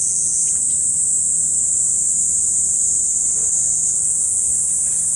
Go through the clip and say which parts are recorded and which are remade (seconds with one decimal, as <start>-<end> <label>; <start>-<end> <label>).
0.0-0.4 remade; 0.4-3.5 recorded; 3.5-4.5 remade; 4.5-5.2 recorded